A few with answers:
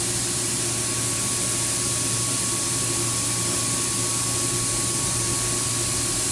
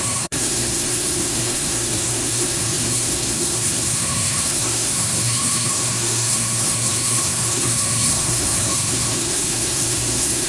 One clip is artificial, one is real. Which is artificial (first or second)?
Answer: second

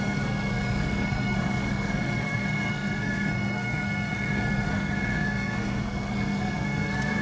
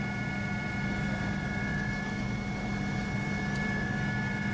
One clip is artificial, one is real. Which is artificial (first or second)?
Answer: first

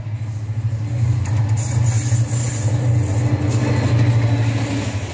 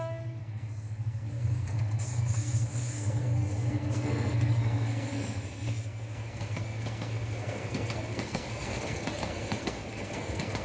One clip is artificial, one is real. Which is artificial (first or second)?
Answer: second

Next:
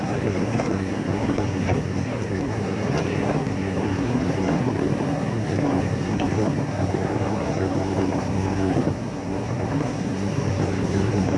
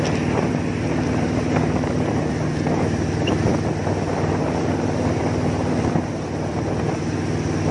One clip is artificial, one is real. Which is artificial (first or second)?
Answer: first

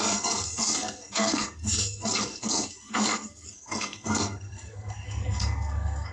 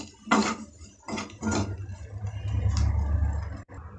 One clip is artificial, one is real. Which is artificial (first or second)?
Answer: first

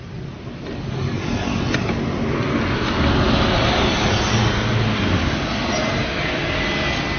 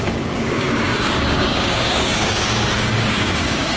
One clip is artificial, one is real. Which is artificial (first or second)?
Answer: second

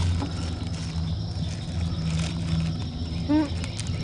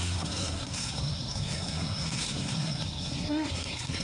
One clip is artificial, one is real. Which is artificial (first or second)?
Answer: second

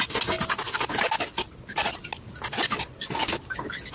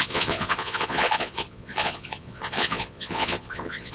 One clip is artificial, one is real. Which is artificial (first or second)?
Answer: second